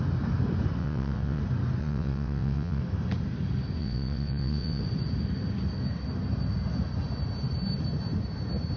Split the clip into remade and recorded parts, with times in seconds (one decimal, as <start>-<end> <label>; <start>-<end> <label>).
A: 0.0-0.8 recorded; 0.8-1.4 remade; 1.4-1.8 recorded; 1.8-2.8 remade; 2.8-3.8 recorded; 3.8-4.8 remade; 4.8-8.8 recorded

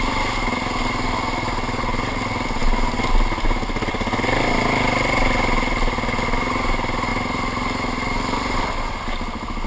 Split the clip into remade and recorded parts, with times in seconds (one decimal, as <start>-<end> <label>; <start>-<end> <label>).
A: 0.0-9.7 recorded

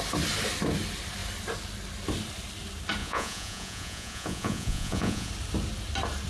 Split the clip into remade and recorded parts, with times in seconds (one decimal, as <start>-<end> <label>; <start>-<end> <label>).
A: 0.0-3.0 recorded; 3.0-5.3 remade; 5.3-6.3 recorded

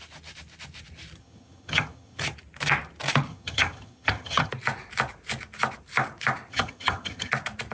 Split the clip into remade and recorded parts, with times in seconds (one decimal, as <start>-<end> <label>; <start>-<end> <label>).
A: 0.0-1.2 recorded; 1.2-2.2 remade; 2.2-3.3 recorded; 3.3-4.5 remade; 4.5-6.5 recorded; 6.5-7.3 remade; 7.3-7.7 recorded

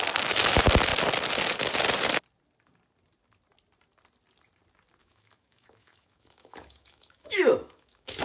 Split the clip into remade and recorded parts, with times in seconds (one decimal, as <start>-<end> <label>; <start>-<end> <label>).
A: 0.0-5.0 recorded; 5.0-8.2 remade